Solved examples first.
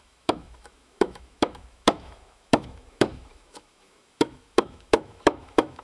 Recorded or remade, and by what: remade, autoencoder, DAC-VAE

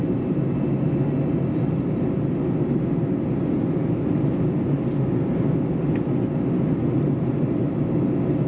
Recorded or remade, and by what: recorded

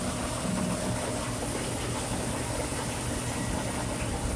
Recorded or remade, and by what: recorded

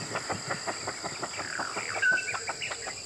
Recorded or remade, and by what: recorded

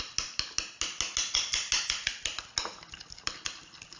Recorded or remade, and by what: recorded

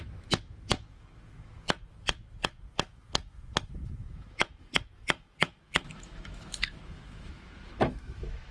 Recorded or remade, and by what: remade, autoencoder, DAC-VAE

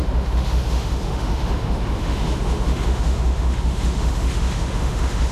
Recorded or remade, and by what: remade, autoencoder, DAC-VAE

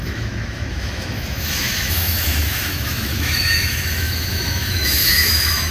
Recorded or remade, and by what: remade, autoencoder, DAC-VAE